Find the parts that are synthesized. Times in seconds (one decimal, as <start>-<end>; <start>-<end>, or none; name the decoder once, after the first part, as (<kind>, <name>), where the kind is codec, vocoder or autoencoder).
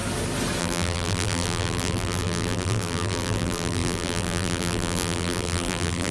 0.6-6.1 (vocoder, BigVGAN v2)